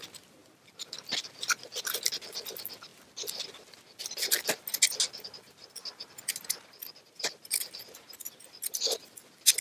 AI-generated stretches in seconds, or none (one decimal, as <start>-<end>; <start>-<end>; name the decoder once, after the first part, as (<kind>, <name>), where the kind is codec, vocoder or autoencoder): none